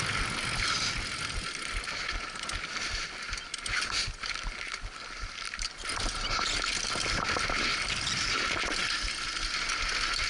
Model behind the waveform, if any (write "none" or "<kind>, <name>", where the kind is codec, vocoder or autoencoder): none